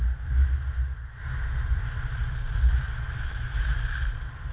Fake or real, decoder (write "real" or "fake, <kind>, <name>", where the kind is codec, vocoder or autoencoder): real